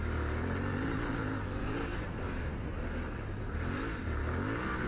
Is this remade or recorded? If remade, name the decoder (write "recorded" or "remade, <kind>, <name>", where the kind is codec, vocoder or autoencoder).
recorded